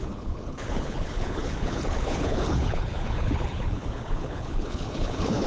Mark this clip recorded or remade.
remade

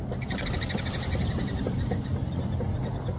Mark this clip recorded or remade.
recorded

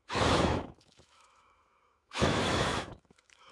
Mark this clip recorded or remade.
remade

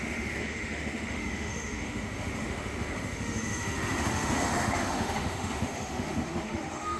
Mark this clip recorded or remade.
remade